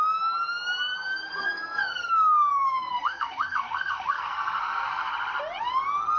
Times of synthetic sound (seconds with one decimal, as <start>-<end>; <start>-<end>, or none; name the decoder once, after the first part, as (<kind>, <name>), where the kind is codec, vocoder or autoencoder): 1.4-5.1 (codec, SNAC)